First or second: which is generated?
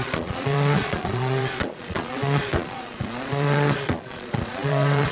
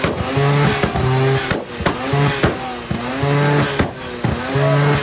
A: first